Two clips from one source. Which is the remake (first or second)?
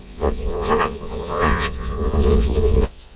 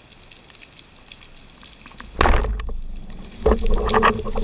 first